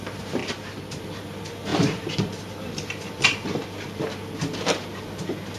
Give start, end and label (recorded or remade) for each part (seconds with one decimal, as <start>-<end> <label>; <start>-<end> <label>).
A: 0.0-1.7 recorded; 1.7-4.0 remade; 4.0-5.6 recorded

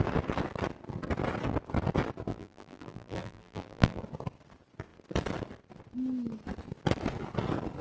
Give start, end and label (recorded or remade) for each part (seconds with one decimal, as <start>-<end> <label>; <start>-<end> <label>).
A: 0.0-2.3 recorded; 2.3-4.0 remade; 4.0-7.8 recorded